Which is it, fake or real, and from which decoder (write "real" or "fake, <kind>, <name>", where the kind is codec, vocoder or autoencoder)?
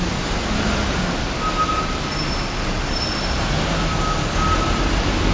real